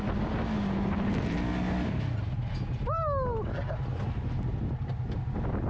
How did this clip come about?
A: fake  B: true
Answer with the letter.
B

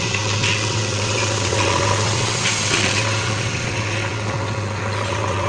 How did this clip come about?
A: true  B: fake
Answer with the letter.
B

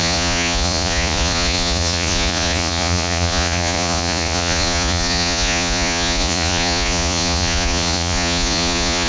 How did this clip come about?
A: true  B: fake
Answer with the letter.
B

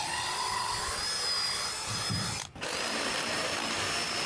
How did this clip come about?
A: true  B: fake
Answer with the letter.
A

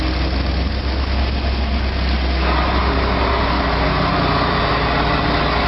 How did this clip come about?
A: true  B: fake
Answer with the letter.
A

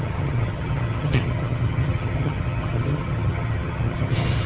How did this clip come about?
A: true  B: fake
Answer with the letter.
B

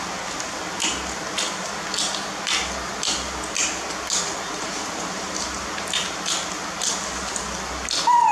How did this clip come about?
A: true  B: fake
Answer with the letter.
A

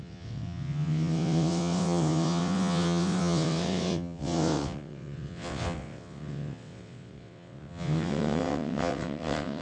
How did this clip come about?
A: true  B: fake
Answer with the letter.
B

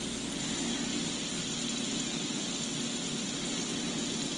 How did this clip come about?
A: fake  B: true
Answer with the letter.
B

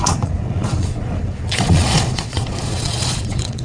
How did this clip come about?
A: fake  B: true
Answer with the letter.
A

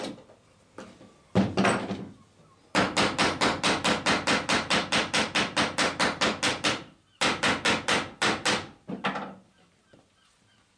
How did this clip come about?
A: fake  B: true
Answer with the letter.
B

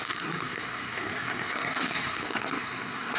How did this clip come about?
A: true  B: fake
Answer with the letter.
B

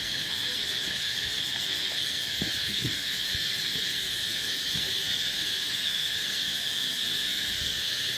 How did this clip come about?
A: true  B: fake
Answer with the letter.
B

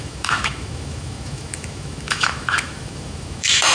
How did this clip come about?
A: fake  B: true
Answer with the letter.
A